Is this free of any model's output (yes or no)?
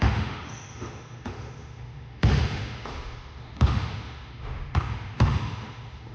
no